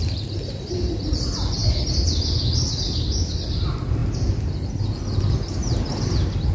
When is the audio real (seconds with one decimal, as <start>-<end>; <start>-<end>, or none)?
0.0-6.5